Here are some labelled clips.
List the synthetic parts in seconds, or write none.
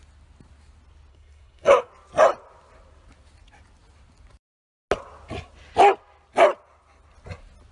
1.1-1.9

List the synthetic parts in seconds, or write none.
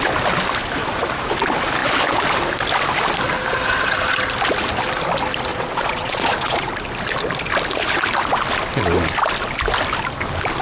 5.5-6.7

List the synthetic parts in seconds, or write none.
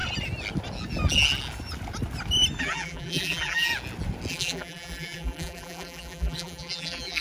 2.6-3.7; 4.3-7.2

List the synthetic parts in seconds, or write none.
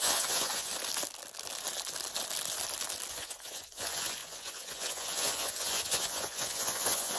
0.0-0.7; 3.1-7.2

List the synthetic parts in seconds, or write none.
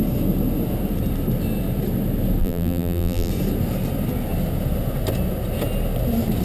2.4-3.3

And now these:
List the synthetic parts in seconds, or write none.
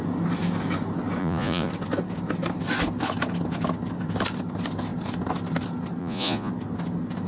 1.2-1.7; 6.0-6.5